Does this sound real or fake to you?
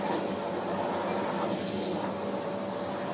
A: real